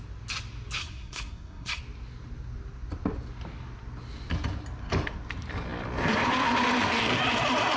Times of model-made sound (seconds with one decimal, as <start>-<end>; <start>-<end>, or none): 0.8-1.8

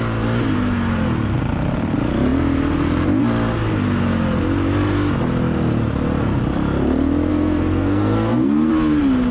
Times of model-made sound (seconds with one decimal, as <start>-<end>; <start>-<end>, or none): 7.3-8.7

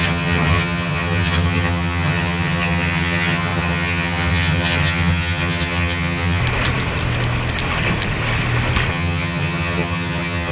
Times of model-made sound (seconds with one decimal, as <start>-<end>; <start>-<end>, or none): 0.0-6.4; 8.9-10.5

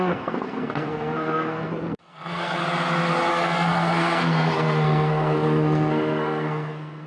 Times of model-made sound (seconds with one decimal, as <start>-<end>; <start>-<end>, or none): 0.0-2.6; 3.3-7.1

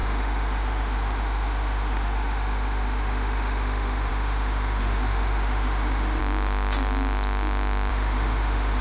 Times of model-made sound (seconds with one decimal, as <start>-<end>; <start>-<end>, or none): 0.0-6.2; 7.9-8.8